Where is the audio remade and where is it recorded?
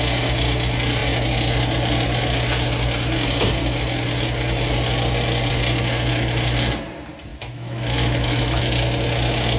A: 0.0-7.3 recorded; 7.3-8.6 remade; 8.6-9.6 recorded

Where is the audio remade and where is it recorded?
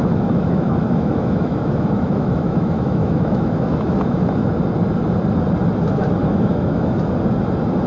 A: 0.0-4.5 remade; 4.5-6.2 recorded; 6.2-7.0 remade; 7.0-7.9 recorded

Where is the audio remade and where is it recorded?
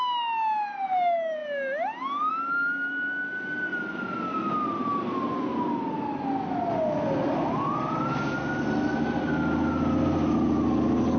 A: 0.0-11.2 recorded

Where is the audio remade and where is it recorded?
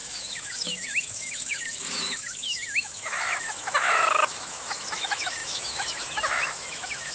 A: 0.0-7.1 remade